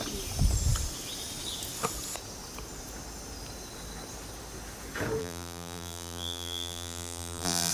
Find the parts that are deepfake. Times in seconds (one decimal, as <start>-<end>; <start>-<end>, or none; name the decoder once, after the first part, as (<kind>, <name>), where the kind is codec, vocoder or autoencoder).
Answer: 5.2-7.7 (vocoder, BigVGAN v2)